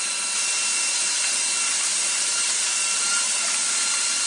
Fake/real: real